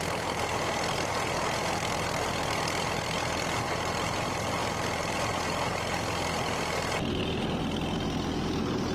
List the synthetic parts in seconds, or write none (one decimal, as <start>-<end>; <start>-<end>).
none